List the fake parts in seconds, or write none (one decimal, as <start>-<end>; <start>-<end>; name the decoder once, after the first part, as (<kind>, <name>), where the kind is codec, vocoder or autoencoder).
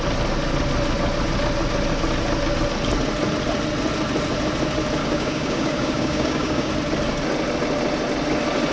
5.0-6.7 (codec, DAC)